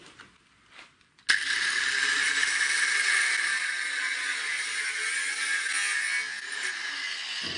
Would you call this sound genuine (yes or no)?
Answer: yes